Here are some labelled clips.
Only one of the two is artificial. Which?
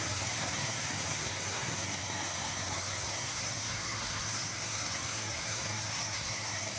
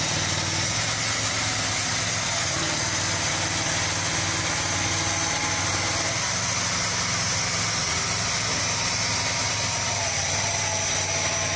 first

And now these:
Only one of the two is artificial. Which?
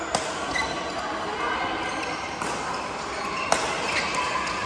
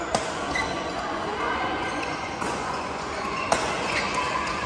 second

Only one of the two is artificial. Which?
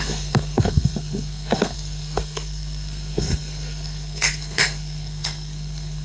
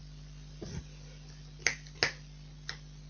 first